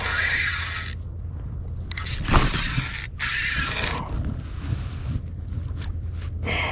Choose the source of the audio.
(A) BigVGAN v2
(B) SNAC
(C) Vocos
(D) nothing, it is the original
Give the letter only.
D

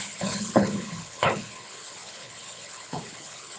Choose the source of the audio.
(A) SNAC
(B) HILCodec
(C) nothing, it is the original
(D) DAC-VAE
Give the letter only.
B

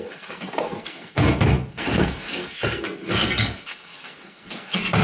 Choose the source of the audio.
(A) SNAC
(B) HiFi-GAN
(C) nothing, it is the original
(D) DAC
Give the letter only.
A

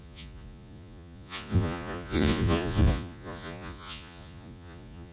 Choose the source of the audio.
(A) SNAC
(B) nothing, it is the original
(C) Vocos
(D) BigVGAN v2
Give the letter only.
C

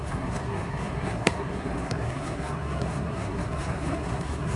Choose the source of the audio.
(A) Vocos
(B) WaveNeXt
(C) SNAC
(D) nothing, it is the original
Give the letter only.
C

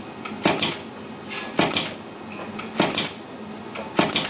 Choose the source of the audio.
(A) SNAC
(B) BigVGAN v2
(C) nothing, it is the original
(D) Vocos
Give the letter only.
C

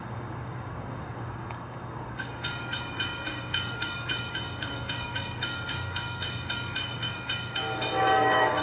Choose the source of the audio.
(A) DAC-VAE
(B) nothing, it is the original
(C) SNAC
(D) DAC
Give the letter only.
D